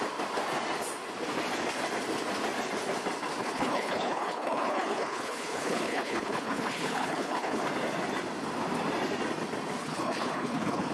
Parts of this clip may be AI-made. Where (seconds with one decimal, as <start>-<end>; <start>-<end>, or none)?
3.4-7.6; 9.8-10.9